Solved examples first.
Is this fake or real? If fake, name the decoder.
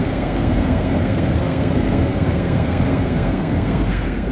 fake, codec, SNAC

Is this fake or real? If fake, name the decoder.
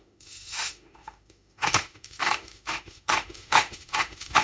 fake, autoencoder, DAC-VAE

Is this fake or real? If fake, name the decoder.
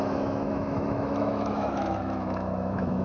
fake, autoencoder, DAC-VAE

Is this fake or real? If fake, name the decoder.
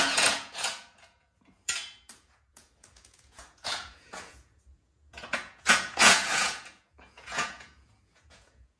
fake, vocoder, Vocos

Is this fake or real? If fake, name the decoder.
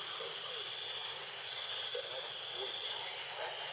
real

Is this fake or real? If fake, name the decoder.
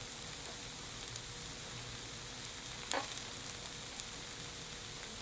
real